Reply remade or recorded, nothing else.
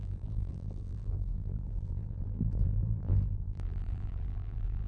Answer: remade